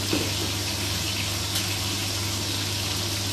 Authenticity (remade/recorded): recorded